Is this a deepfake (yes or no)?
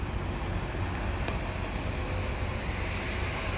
no